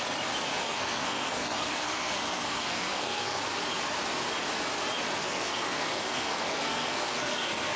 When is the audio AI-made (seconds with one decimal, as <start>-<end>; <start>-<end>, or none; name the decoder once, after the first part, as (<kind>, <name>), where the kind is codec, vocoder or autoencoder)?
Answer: 0.6-3.4 (codec, SNAC); 5.2-7.8